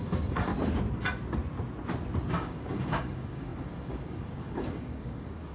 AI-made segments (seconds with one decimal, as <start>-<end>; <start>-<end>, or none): 0.0-0.5; 2.3-5.5